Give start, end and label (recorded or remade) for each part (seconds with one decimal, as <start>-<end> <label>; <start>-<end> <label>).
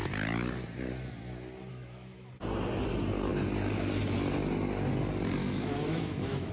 0.0-1.7 recorded; 1.7-2.3 remade; 2.3-5.4 recorded; 5.4-6.5 remade